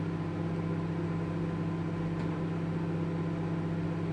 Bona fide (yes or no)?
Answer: yes